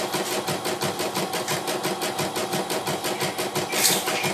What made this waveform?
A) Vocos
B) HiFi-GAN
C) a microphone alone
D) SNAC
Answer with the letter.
C